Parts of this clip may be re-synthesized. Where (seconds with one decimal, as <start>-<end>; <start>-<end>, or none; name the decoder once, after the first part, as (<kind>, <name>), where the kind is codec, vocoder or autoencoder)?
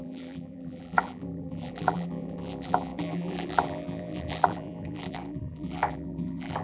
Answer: 0.0-6.6 (vocoder, BigVGAN v2)